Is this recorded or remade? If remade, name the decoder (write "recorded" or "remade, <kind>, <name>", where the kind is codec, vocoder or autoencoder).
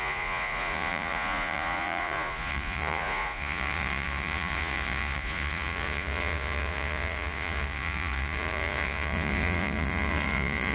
remade, vocoder, Vocos